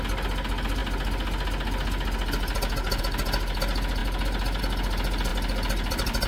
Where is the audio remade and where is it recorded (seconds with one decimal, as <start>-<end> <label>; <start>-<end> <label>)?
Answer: 0.0-6.3 recorded

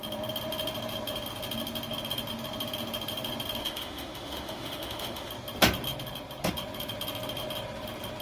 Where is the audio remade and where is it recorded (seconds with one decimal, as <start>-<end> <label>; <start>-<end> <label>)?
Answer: 0.0-3.6 recorded; 3.6-5.3 remade; 5.3-8.2 recorded

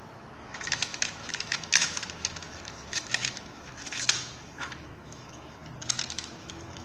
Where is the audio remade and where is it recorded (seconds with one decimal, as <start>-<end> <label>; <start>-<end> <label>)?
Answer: 0.0-5.6 remade; 5.6-6.1 recorded; 6.1-6.8 remade

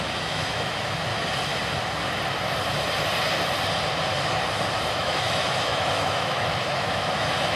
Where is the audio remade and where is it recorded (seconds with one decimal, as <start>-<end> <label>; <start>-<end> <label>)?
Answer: 0.0-1.1 remade; 1.1-4.9 recorded; 4.9-7.6 remade

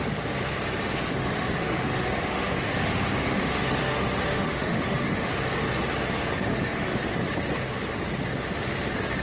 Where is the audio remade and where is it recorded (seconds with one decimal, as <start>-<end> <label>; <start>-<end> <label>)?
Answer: 0.0-1.2 recorded; 1.2-5.3 remade; 5.3-6.5 recorded; 6.5-7.1 remade; 7.1-9.2 recorded

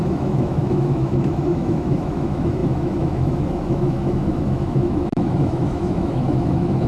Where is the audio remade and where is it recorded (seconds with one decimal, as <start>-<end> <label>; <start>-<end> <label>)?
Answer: 0.0-6.9 remade

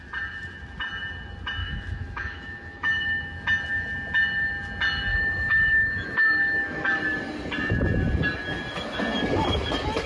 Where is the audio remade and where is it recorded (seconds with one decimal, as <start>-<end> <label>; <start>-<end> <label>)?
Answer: 0.0-1.6 recorded; 1.6-3.2 remade; 3.2-5.1 recorded; 5.1-7.0 remade; 7.0-10.1 recorded

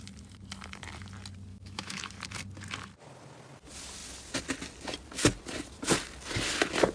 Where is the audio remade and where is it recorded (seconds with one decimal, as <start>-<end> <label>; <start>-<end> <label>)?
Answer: 0.0-1.5 recorded; 1.5-2.0 remade; 2.0-6.9 recorded